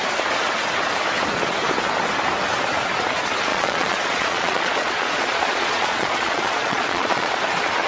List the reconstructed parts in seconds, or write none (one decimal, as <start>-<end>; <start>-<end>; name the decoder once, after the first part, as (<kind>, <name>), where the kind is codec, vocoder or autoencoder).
3.5-7.4 (vocoder, Vocos)